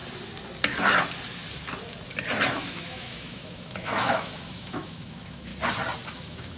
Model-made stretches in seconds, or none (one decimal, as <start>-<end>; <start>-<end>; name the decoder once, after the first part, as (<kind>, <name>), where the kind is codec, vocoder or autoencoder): 2.5-5.5 (autoencoder, DAC-VAE); 6.1-6.6